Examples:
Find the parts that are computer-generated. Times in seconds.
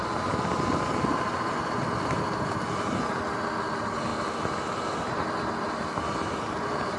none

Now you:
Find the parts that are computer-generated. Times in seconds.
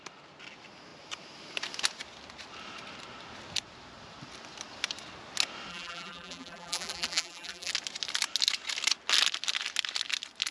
5.7-7.7 (vocoder, BigVGAN v2)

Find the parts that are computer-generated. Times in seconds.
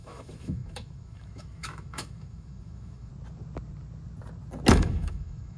0.0-3.1 (autoencoder, DAC-VAE); 4.7-5.6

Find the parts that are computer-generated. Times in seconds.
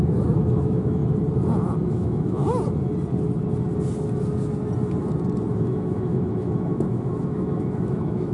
0.0-1.0 (autoencoder, DAC-VAE); 1.9-2.4; 5.5-8.3